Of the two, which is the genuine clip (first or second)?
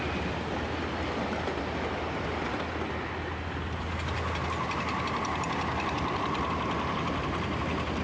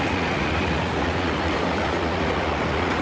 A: first